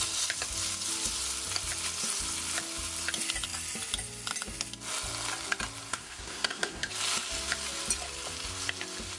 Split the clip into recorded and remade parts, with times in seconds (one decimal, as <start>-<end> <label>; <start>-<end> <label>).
0.0-5.9 recorded; 5.9-6.9 remade; 6.9-9.2 recorded